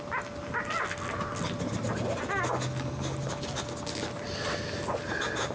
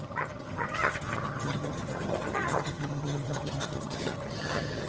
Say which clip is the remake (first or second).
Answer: second